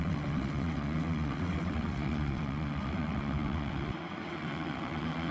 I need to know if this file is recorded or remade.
remade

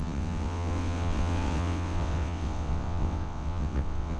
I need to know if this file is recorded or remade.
remade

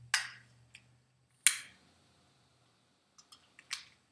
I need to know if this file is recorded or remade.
recorded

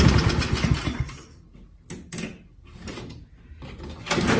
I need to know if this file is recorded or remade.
recorded